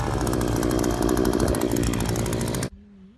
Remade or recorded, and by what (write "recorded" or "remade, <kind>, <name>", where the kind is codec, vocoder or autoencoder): recorded